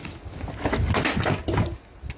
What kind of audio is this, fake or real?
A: real